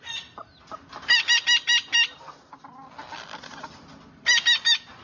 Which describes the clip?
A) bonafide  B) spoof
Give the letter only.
A